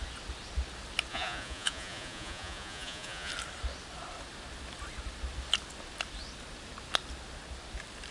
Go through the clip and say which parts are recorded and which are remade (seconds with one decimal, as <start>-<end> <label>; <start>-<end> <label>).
0.0-1.1 recorded; 1.1-3.3 remade; 3.3-8.1 recorded